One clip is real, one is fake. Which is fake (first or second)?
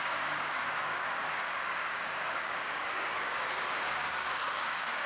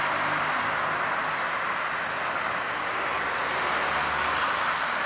first